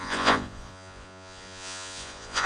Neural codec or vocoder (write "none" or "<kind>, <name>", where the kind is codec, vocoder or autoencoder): vocoder, Vocos